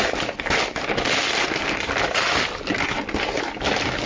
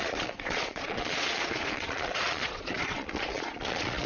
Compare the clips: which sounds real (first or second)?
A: first